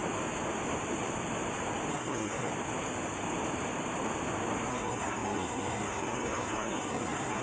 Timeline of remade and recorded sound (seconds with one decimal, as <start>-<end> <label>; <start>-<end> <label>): 0.0-1.9 recorded; 1.9-2.5 remade; 2.5-4.7 recorded; 4.7-7.4 remade